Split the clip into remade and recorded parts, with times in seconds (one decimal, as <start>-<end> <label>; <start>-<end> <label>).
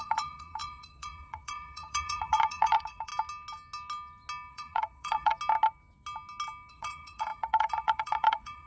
0.0-3.1 remade; 3.1-4.5 recorded; 4.5-5.3 remade; 5.3-6.7 recorded; 6.7-8.7 remade